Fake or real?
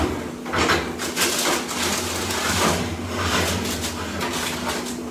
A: real